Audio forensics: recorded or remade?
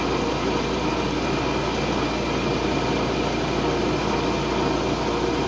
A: recorded